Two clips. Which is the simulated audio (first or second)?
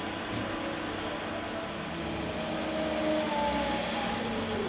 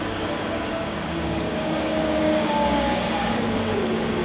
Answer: second